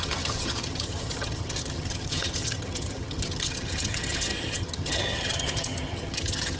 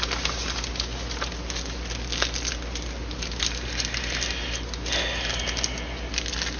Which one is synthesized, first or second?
first